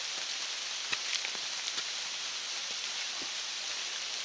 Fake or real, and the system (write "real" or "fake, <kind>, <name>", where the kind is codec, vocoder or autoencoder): real